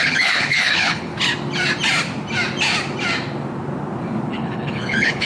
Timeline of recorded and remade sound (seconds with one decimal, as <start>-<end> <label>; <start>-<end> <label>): 0.0-1.1 remade; 1.1-4.3 recorded; 4.3-5.3 remade